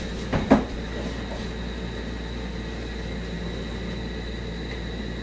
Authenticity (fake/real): real